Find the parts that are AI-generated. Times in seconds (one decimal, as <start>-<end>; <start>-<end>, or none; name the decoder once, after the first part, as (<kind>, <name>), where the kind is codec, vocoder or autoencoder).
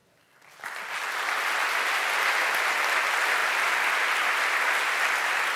none